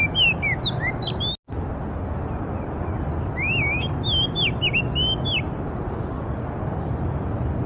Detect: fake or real real